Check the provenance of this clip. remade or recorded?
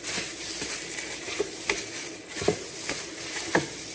recorded